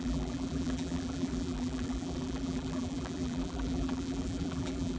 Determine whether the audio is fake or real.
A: fake